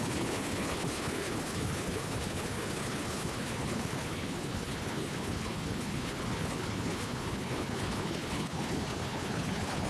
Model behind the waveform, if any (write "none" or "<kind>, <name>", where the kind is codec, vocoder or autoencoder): codec, HILCodec